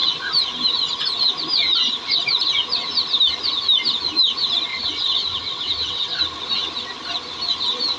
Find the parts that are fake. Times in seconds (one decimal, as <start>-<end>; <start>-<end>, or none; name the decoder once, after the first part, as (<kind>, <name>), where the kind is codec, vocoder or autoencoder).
4.7-6.2 (vocoder, WaveNeXt)